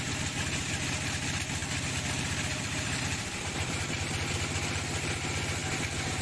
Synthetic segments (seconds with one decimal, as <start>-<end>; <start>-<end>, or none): 1.6-4.8